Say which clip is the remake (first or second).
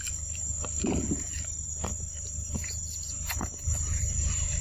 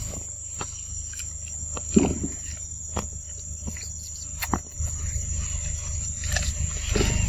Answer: first